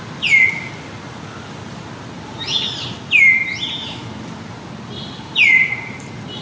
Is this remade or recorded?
recorded